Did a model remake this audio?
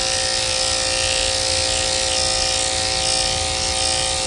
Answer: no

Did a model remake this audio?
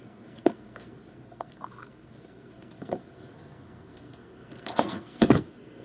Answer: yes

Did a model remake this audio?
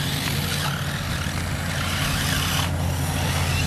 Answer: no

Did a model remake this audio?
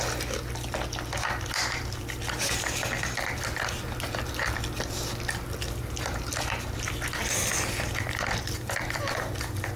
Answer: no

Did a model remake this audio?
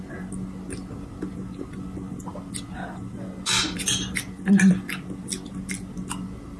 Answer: no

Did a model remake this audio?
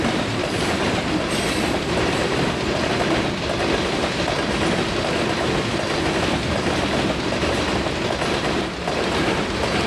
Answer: no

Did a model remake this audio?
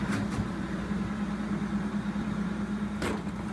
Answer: no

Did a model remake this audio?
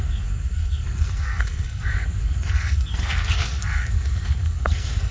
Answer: yes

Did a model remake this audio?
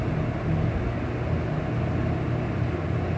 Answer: no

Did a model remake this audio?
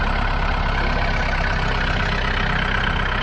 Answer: no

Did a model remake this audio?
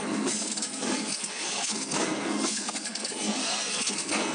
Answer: yes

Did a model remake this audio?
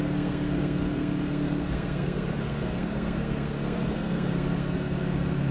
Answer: yes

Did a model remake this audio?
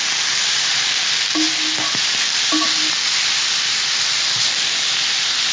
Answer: no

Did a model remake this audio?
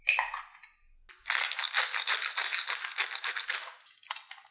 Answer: no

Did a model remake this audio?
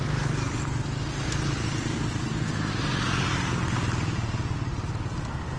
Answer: no